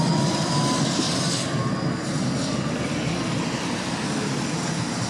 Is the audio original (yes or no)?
yes